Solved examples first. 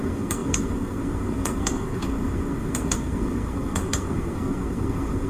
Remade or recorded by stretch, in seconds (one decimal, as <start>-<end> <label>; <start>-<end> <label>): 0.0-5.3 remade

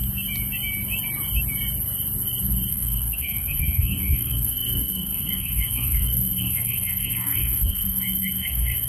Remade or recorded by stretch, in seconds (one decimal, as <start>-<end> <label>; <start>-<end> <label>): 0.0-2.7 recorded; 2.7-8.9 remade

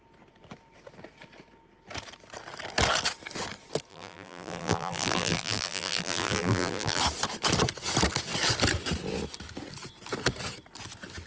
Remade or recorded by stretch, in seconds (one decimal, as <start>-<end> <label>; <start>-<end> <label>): 0.0-3.9 recorded; 3.9-7.0 remade; 7.0-11.3 recorded

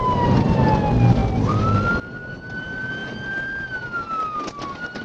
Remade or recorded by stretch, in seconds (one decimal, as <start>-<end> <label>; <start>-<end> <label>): 0.0-5.0 recorded

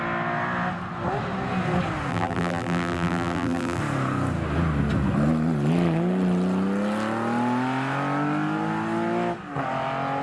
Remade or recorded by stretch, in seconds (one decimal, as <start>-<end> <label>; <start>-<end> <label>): 0.0-2.1 recorded; 2.1-3.8 remade; 3.8-10.2 recorded

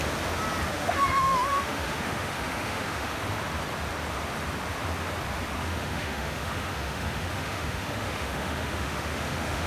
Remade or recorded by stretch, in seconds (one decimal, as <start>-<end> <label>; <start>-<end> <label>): 0.0-0.7 recorded; 0.7-3.2 remade; 3.2-5.6 recorded; 5.6-9.7 remade